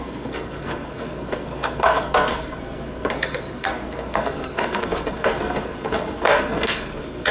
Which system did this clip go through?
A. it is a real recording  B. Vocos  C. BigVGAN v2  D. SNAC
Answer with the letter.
D